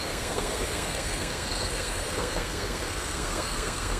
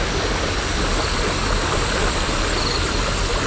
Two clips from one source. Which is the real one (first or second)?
second